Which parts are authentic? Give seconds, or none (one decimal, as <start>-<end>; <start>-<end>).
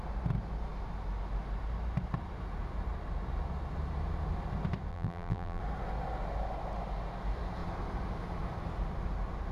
0.0-4.9; 5.6-9.5